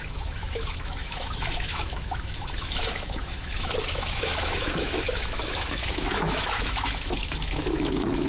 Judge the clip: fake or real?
fake